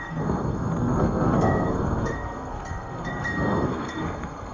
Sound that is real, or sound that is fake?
fake